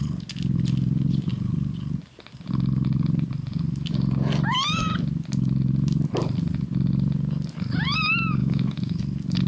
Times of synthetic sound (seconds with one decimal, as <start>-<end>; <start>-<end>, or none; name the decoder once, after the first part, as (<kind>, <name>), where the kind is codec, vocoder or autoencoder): 8.4-9.0 (autoencoder, DAC-VAE)